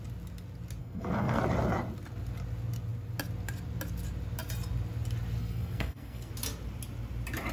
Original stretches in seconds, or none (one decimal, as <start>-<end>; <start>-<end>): 0.0-0.8; 1.4-5.4; 6.3-7.5